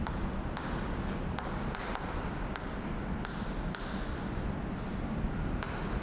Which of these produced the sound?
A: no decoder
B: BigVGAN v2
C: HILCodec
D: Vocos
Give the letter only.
A